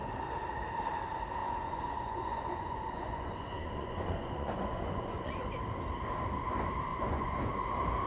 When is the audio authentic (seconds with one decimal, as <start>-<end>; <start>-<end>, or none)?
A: 0.0-1.4; 5.5-6.9; 7.5-8.1